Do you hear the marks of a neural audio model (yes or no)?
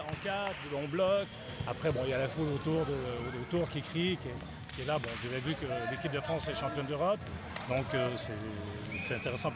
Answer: no